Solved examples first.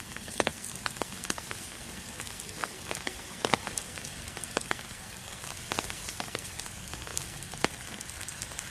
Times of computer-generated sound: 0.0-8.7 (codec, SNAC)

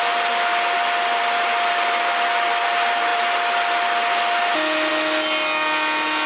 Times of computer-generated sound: none

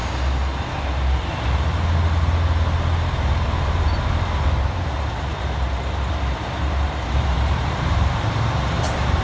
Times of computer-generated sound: 4.1-5.3 (vocoder, BigVGAN v2); 6.1-9.2

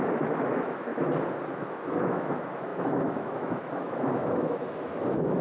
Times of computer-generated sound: 0.0-0.9 (autoencoder, DAC-VAE); 1.5-5.4

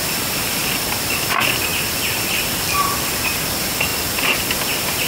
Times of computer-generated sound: 0.6-1.2 (vocoder, BigVGAN v2); 1.7-3.5; 3.9-4.4

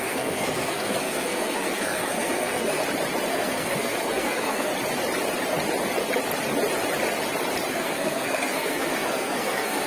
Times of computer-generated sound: 0.0-2.8 (codec, SNAC); 3.3-4.7; 7.7-9.9

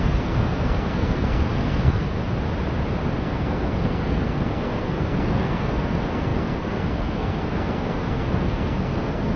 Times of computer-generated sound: 0.0-2.2 (codec, SNAC); 3.2-9.4

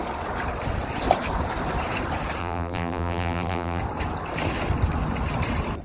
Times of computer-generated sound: 2.4-3.8 (vocoder, BigVGAN v2)